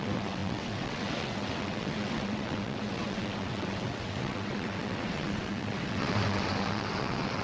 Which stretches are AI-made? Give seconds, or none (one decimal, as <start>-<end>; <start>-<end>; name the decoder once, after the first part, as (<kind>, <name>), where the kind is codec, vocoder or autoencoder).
0.0-7.4 (vocoder, WaveNeXt)